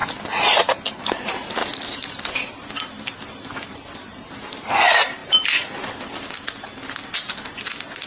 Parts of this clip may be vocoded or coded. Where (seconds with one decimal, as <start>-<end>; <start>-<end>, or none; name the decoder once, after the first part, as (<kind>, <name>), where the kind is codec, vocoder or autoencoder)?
0.9-1.6 (vocoder, BigVGAN v2); 3.7-5.2